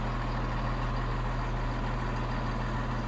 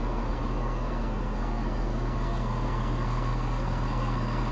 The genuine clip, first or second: first